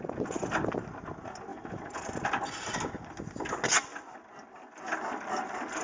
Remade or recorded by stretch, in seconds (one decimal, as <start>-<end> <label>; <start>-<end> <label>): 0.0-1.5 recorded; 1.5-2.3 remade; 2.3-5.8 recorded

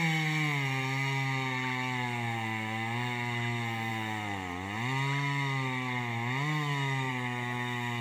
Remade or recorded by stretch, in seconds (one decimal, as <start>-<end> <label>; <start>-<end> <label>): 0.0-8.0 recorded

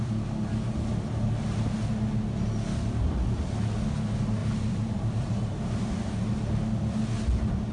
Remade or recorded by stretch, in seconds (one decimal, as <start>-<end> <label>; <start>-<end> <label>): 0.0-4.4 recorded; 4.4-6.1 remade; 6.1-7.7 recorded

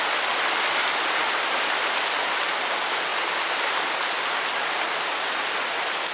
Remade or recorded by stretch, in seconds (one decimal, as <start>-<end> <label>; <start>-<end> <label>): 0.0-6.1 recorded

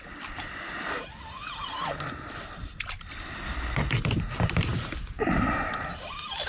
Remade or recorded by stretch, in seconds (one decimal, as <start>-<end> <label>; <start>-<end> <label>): 0.0-1.8 recorded; 1.8-5.1 remade; 5.1-6.5 recorded

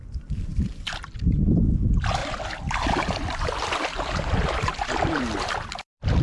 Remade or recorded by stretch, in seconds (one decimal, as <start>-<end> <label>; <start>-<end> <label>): 0.0-0.5 recorded; 0.5-1.3 remade; 1.3-2.2 recorded; 2.2-6.2 remade